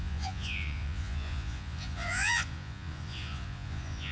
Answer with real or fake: fake